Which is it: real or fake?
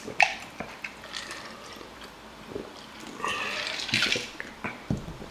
fake